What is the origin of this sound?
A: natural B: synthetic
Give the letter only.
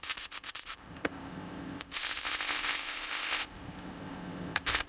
B